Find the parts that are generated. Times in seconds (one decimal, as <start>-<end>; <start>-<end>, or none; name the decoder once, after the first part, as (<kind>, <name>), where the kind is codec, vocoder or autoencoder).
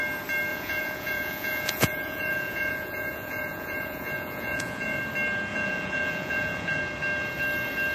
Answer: 0.5-5.0 (vocoder, Vocos); 5.5-6.8